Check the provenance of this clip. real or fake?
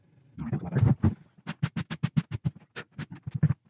real